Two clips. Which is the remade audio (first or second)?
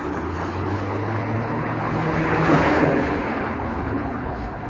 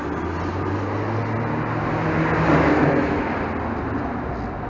first